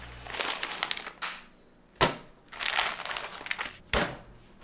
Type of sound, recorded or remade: recorded